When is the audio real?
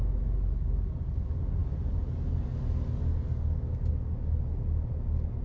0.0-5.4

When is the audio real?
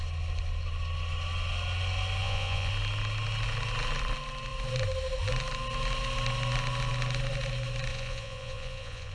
0.0-2.2; 2.7-7.9